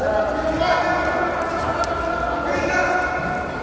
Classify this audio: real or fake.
real